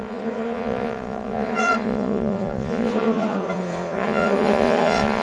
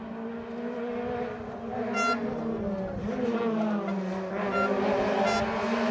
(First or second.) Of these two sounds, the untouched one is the second